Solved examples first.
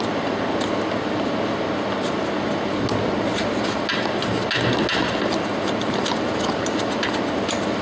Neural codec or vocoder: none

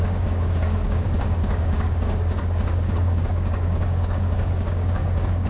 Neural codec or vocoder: codec, DAC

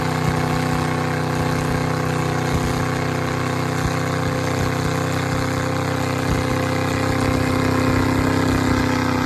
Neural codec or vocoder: none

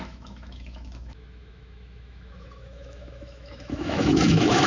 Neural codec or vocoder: autoencoder, DAC-VAE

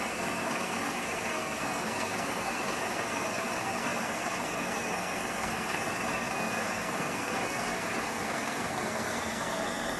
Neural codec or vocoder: codec, SNAC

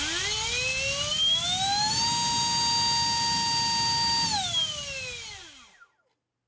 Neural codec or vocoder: none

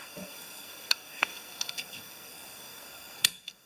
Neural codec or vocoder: codec, SNAC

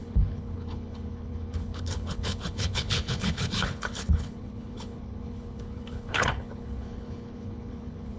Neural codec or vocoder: codec, HILCodec